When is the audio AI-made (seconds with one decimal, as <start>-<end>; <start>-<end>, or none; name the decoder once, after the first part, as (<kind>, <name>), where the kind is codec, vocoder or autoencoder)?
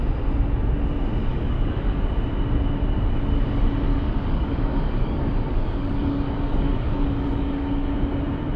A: 1.3-2.0 (codec, DAC); 3.9-7.9